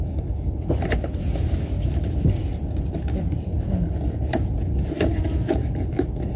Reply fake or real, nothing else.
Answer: real